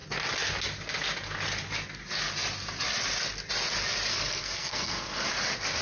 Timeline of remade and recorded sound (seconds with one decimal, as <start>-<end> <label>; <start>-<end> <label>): 0.0-4.1 recorded; 4.1-5.3 remade; 5.3-5.8 recorded